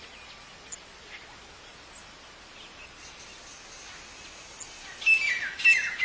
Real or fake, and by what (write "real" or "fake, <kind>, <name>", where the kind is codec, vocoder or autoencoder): real